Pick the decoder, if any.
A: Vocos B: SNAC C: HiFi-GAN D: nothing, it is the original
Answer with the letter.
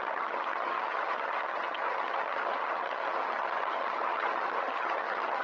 C